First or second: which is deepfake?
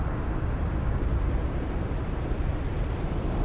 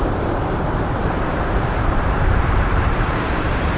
second